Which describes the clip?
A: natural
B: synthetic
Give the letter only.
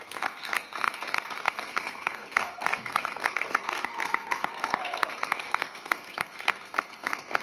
B